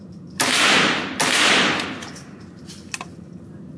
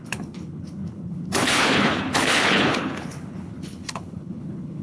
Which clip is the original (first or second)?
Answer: first